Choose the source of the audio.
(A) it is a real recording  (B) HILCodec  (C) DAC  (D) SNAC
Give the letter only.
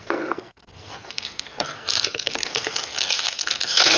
D